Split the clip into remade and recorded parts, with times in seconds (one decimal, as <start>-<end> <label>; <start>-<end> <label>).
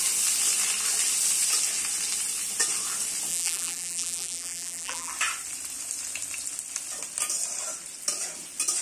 0.0-3.3 recorded; 3.3-5.1 remade; 5.1-8.8 recorded